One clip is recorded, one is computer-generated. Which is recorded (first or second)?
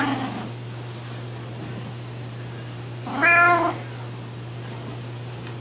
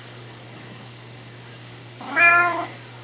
first